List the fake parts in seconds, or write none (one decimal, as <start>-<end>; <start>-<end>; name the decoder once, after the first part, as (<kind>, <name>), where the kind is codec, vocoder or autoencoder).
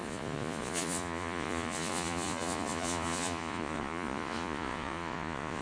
0.0-5.6 (vocoder, Vocos)